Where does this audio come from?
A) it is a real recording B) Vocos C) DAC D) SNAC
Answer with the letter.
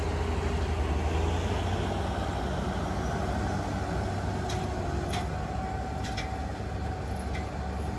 A